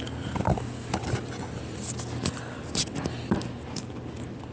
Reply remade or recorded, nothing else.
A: recorded